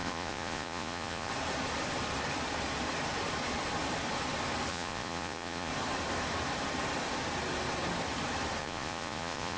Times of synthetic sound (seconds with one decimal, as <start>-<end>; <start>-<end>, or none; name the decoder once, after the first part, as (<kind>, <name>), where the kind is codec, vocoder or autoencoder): 0.0-1.3 (vocoder, Vocos); 4.7-5.7; 8.6-9.6